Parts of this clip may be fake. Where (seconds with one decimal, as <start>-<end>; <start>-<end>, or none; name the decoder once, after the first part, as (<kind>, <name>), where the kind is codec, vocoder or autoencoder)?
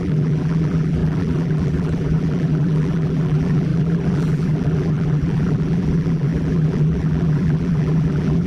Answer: 0.0-8.5 (vocoder, BigVGAN v2)